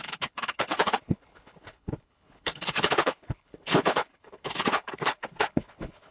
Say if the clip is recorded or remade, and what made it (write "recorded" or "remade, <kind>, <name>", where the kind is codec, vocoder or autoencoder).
remade, codec, HILCodec